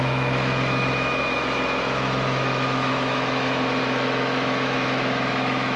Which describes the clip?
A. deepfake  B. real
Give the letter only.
A